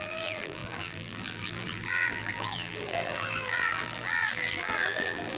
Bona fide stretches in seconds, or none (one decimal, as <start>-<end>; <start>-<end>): none